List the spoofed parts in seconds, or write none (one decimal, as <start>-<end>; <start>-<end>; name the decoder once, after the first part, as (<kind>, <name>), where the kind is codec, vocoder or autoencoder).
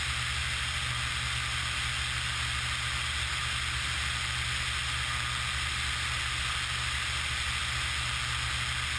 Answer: none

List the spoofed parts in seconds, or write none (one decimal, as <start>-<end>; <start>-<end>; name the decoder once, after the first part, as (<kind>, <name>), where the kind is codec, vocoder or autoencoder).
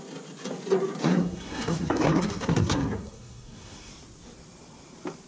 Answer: 1.0-3.9 (codec, SNAC)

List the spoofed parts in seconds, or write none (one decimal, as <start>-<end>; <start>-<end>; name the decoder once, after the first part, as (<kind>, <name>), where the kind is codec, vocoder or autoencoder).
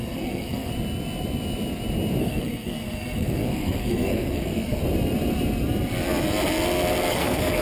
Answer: 0.0-0.7 (codec, SNAC); 2.2-4.8; 7.1-7.6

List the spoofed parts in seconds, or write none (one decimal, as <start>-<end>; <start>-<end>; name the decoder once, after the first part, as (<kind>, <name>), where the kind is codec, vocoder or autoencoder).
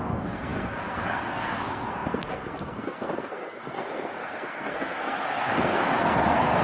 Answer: 0.0-6.6 (codec, SNAC)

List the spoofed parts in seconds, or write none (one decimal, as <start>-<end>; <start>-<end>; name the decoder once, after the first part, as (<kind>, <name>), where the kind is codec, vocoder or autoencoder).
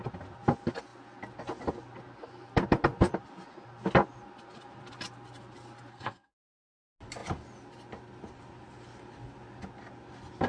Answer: 5.9-6.4 (codec, SNAC)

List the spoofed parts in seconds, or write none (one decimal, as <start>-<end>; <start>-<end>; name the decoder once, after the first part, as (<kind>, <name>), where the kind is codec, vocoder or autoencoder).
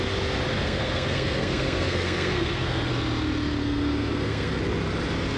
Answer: 0.5-2.9 (codec, SNAC); 3.6-4.6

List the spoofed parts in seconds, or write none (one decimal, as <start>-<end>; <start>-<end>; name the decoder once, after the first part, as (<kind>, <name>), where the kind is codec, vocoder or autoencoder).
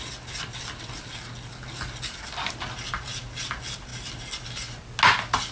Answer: none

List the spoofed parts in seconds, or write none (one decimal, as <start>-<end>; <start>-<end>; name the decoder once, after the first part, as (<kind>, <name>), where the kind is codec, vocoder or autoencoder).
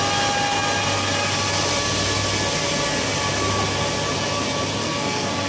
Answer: 4.8-5.5 (codec, SNAC)